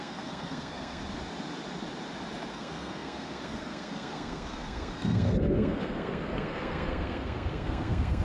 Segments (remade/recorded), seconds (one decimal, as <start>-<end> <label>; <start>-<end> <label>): 0.0-1.0 remade; 1.0-2.5 recorded; 2.5-8.2 remade